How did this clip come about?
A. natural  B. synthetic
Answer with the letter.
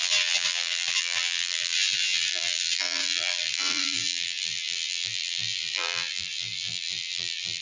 B